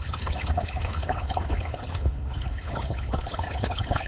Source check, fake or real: fake